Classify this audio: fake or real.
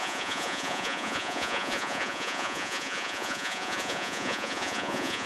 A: fake